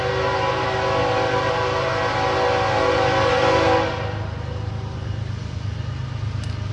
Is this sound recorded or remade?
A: recorded